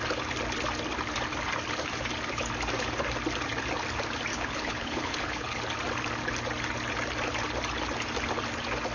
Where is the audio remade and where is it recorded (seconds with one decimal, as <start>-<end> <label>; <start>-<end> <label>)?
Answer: 0.0-4.3 recorded; 4.3-5.6 remade; 5.6-8.9 recorded